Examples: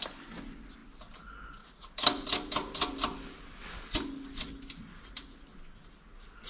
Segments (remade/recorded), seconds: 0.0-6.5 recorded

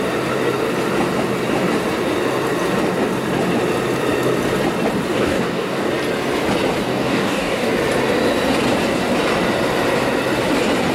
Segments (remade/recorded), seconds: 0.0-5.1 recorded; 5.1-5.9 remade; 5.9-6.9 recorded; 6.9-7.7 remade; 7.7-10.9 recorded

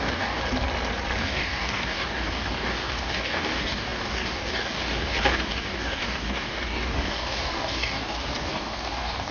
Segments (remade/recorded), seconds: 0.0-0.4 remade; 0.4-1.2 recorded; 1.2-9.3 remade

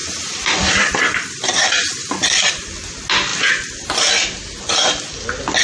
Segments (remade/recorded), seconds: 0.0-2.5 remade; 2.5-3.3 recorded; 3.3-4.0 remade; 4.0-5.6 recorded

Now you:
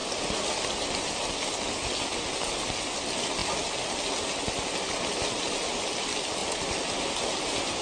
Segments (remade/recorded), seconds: 0.0-7.8 recorded

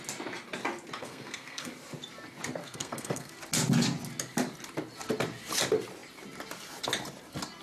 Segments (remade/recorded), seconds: 0.0-1.0 recorded; 1.0-1.7 remade; 1.7-2.6 recorded; 2.6-3.3 remade; 3.3-7.6 recorded